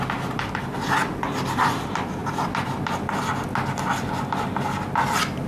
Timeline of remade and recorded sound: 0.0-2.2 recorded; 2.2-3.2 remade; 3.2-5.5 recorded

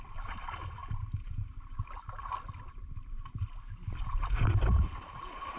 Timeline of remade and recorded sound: 0.0-5.6 recorded

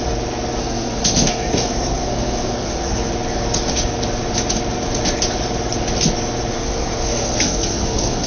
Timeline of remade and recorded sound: 0.0-0.6 recorded; 0.6-3.1 remade; 3.1-6.5 recorded; 6.5-8.3 remade

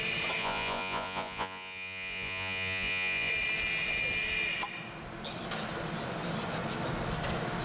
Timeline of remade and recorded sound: 0.0-0.4 recorded; 0.4-3.3 remade; 3.3-7.6 recorded

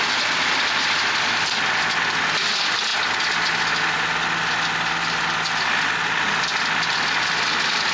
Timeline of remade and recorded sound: 0.0-7.9 recorded